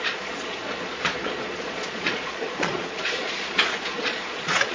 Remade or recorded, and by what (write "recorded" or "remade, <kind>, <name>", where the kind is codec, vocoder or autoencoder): remade, vocoder, Vocos